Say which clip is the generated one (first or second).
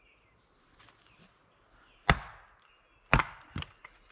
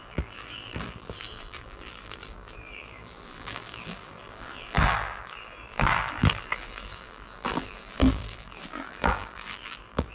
second